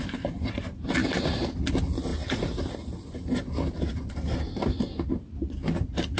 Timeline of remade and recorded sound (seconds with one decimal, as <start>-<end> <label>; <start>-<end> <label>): 0.0-6.2 recorded